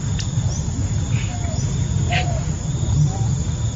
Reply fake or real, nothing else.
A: real